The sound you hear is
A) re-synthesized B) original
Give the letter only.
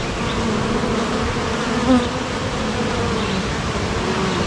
B